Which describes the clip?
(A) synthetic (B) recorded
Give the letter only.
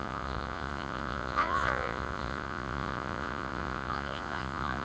A